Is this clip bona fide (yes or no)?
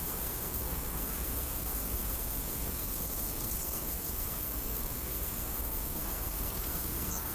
no